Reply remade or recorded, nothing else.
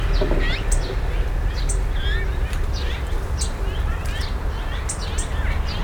recorded